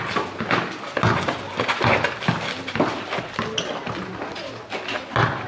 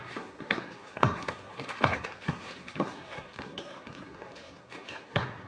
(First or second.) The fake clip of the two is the second